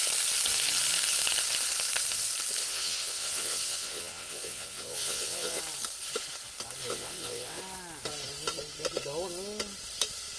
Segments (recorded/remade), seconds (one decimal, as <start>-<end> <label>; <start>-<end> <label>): 0.0-2.6 recorded; 2.6-5.6 remade; 5.6-6.9 recorded; 6.9-7.6 remade; 7.6-10.4 recorded